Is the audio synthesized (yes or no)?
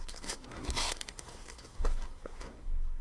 yes